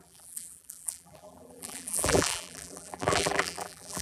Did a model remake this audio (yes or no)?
yes